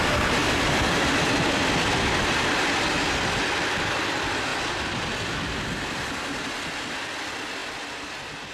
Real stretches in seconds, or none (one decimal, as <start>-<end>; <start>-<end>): 0.0-8.5